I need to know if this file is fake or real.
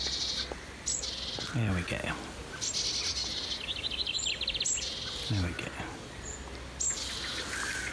real